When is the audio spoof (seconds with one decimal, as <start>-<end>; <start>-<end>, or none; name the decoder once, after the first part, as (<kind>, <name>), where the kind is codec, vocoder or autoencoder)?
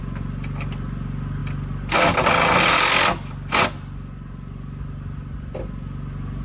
none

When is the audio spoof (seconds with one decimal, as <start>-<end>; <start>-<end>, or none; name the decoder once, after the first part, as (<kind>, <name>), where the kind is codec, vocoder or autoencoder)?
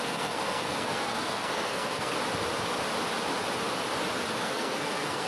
0.0-2.1 (codec, SNAC); 4.3-5.3